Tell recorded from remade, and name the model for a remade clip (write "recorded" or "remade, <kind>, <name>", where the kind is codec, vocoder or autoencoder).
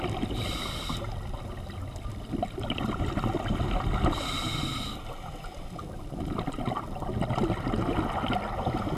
recorded